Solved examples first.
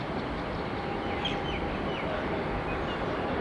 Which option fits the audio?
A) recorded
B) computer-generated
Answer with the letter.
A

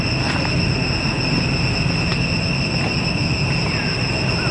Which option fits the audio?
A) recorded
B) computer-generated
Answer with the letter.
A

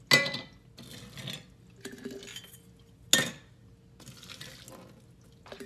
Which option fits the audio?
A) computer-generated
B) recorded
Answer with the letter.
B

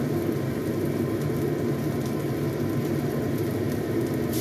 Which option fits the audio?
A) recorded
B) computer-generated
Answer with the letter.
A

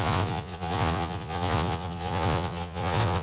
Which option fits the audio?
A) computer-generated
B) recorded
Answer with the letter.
A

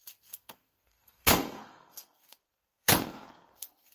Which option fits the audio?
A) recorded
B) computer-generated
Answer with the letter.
B